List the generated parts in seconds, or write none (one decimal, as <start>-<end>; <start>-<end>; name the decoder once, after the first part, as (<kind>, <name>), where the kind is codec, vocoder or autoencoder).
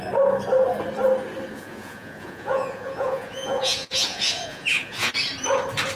1.5-5.1 (vocoder, Vocos)